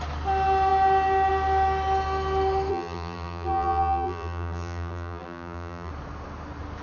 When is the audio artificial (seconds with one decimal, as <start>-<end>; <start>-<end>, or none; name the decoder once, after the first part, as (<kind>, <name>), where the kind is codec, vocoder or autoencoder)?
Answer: 2.7-5.9 (vocoder, BigVGAN v2)